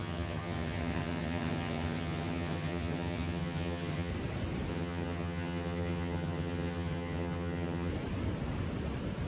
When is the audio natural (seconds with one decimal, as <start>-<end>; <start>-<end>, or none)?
4.1-4.7; 7.9-9.3